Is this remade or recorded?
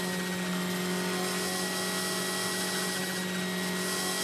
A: recorded